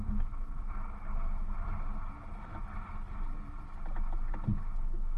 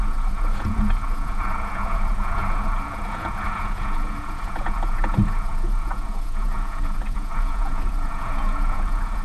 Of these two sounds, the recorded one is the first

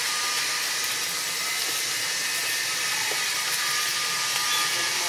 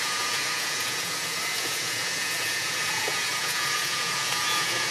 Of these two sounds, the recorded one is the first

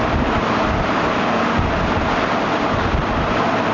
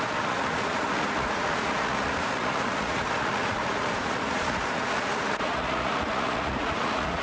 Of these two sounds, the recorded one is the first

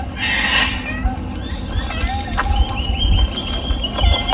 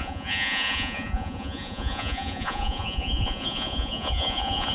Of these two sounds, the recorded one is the first